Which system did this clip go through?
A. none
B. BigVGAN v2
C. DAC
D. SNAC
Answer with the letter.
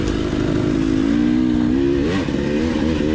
A